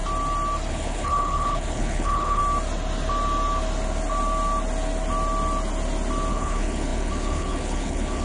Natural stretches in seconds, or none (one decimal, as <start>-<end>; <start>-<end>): 0.0-0.7; 2.4-6.3